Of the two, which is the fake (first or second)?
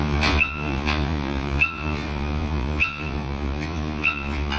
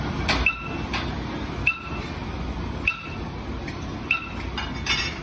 first